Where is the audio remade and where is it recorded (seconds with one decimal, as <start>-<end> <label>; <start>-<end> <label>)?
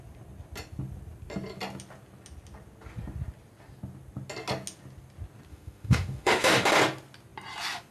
0.0-5.5 recorded; 5.5-6.8 remade; 6.8-7.9 recorded